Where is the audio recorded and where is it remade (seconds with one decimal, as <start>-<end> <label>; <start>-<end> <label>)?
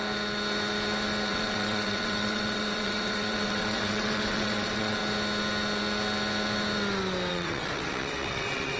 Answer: 0.0-1.3 recorded; 1.3-5.0 remade; 5.0-7.3 recorded; 7.3-8.8 remade